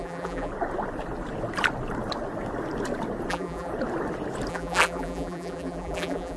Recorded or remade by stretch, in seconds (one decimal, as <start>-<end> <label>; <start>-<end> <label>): 0.0-0.5 remade; 0.5-3.3 recorded; 3.3-3.7 remade; 3.7-4.5 recorded; 4.5-6.4 remade

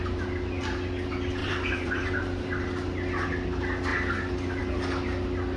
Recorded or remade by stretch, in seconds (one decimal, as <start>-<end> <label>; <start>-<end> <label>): 0.0-1.4 recorded; 1.4-2.5 remade; 2.5-5.6 recorded

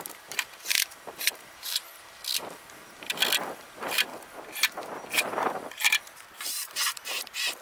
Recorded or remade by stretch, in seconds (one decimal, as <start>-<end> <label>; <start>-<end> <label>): 0.0-1.9 remade; 1.9-3.4 recorded; 3.4-4.1 remade; 4.1-5.1 recorded; 5.1-7.6 remade

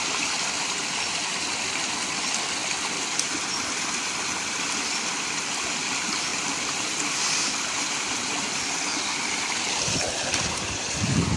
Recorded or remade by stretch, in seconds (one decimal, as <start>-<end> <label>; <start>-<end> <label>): 0.0-2.6 recorded; 2.6-5.1 remade; 5.1-6.3 recorded; 6.3-10.1 remade; 10.1-11.4 recorded

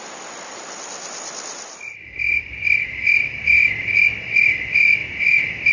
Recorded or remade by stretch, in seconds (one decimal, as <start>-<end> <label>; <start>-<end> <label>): 0.0-5.7 recorded

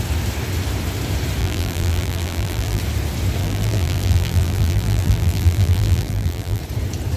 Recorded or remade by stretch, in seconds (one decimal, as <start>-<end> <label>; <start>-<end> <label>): 0.0-1.4 recorded; 1.4-2.8 remade; 2.8-3.4 recorded; 3.4-6.6 remade; 6.6-7.2 recorded

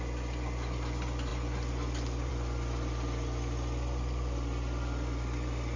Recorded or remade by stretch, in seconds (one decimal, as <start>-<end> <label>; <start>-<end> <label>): 0.0-5.8 recorded